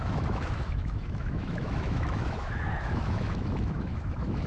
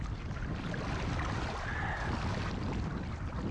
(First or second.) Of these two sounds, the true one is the second